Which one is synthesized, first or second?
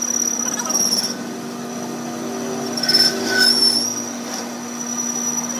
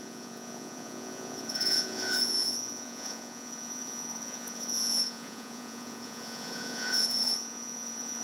second